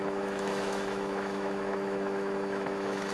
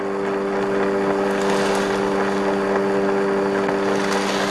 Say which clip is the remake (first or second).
first